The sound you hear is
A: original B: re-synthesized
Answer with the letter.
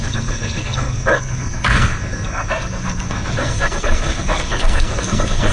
B